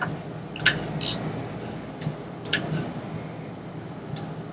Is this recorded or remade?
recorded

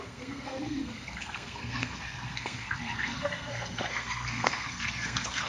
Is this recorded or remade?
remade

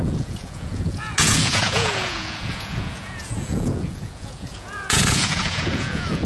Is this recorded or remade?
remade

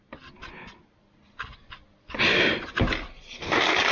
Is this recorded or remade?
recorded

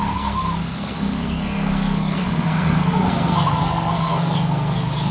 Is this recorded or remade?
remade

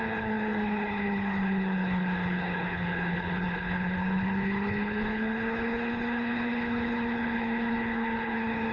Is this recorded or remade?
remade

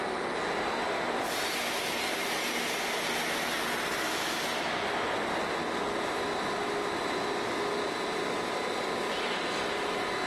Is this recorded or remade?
recorded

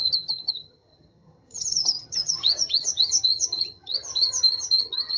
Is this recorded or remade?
remade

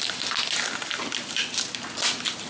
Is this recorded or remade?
recorded